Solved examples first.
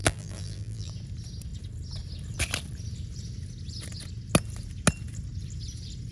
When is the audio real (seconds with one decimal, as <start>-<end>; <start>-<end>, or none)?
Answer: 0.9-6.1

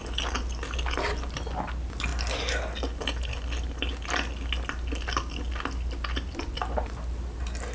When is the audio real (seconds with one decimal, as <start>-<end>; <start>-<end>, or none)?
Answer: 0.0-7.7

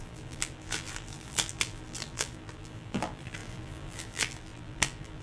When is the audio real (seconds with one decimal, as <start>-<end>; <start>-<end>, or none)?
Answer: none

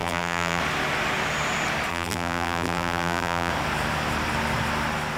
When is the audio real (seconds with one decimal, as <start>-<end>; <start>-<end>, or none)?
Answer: 0.6-1.9; 3.5-5.2

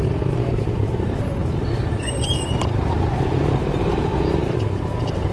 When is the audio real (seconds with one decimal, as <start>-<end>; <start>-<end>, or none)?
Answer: none